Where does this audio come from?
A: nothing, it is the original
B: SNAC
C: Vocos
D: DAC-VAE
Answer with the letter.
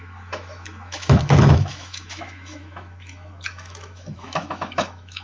D